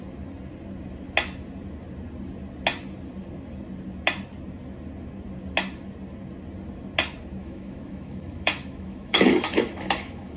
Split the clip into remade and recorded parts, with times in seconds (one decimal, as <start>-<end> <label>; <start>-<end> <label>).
0.0-7.4 recorded; 7.4-10.4 remade